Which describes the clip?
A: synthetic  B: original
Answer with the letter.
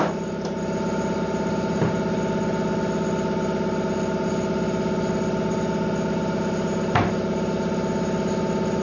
B